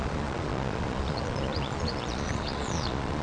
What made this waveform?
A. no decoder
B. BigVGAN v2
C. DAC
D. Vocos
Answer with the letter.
D